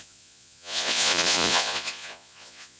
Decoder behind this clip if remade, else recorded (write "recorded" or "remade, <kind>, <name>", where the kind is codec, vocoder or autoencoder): remade, vocoder, Vocos